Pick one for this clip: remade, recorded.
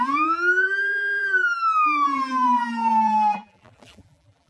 remade